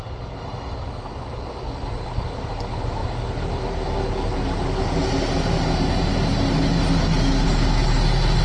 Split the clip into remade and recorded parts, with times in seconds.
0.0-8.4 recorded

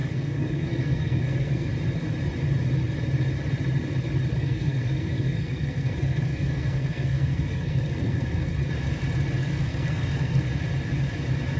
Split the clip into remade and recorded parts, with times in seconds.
0.0-1.7 remade; 1.7-4.4 recorded; 4.4-8.5 remade; 8.5-9.4 recorded; 9.4-10.5 remade; 10.5-11.6 recorded

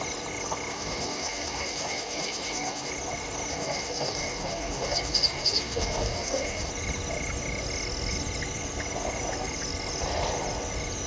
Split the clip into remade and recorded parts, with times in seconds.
0.0-0.7 recorded; 0.7-2.9 remade; 2.9-3.5 recorded; 3.5-6.7 remade; 6.7-11.1 recorded

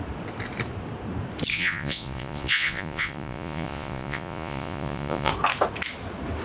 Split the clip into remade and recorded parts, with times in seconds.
0.0-1.5 recorded; 1.5-5.3 remade; 5.3-6.4 recorded

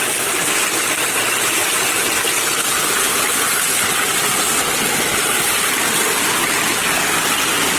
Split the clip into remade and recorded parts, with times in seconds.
0.0-7.8 recorded

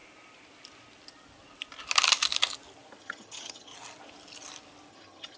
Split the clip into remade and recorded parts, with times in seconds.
0.0-3.0 recorded; 3.0-3.7 remade; 3.7-4.9 recorded; 4.9-5.4 remade